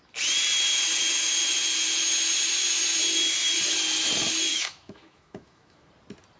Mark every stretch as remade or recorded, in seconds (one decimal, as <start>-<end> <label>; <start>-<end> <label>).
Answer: 0.0-4.5 recorded; 4.5-5.9 remade; 5.9-6.4 recorded